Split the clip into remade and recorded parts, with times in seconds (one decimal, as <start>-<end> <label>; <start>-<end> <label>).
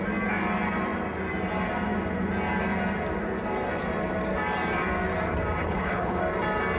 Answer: 0.0-5.6 recorded; 5.6-6.2 remade; 6.2-6.8 recorded